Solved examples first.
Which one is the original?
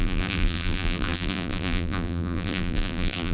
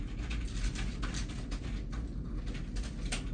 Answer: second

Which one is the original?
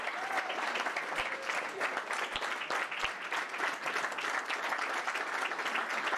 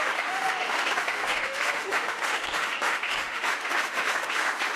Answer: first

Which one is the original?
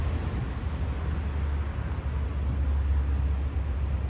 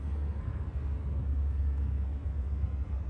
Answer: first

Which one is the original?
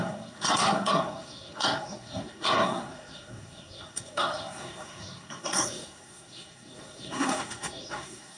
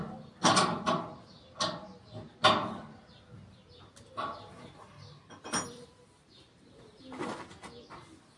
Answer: second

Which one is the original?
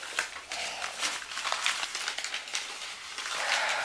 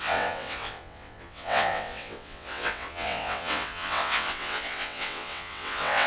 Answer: first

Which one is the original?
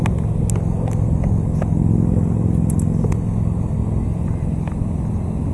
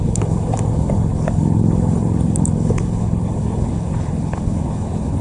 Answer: first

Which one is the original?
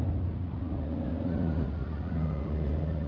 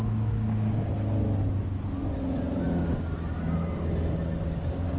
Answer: second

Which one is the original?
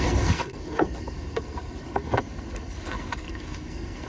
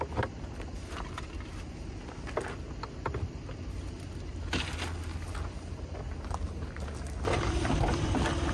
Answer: second